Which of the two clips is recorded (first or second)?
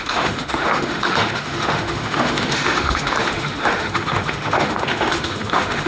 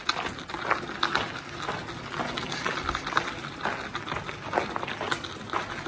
second